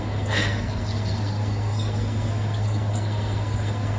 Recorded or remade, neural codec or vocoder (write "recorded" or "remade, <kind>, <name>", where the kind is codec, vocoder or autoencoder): remade, codec, SNAC